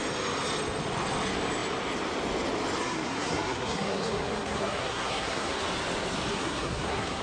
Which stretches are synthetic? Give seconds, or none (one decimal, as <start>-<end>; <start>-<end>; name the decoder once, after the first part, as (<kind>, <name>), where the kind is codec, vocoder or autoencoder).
2.8-5.6 (codec, SNAC); 6.3-7.2